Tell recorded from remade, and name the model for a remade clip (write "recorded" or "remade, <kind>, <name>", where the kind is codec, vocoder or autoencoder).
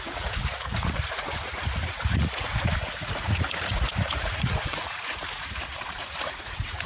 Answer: remade, vocoder, Vocos